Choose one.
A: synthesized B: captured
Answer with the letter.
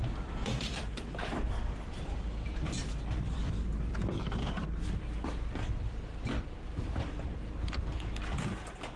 A